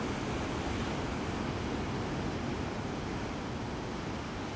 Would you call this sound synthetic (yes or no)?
no